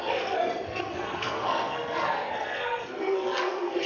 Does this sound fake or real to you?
fake